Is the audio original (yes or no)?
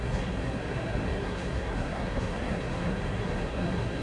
no